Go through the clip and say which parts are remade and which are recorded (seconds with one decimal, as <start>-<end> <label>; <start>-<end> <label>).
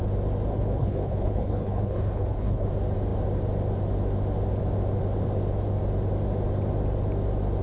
0.0-0.5 recorded; 0.5-2.7 remade; 2.7-7.6 recorded